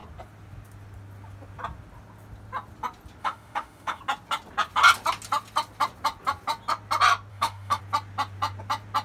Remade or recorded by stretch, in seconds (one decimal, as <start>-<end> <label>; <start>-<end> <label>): 0.0-3.2 recorded; 3.2-4.0 remade; 4.0-7.3 recorded; 7.3-7.8 remade; 7.8-9.0 recorded